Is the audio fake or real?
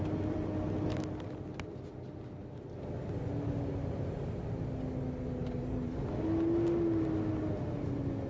real